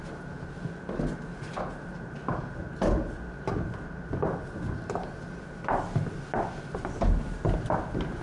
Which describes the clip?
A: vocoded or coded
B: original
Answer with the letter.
B